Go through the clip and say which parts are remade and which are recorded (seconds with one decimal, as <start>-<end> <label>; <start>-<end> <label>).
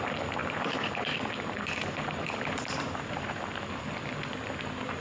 0.0-0.4 recorded; 0.4-3.4 remade; 3.4-5.0 recorded